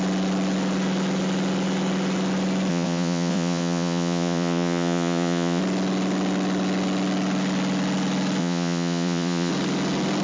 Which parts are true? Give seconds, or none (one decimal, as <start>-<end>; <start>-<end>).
0.0-2.7; 5.6-8.4; 9.5-10.2